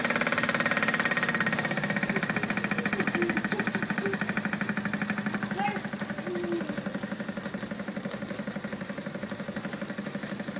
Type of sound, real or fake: real